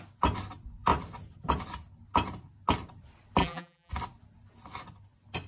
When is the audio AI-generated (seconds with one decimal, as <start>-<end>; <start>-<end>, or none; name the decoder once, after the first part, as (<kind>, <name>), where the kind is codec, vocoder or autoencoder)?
3.4-3.9 (vocoder, BigVGAN v2)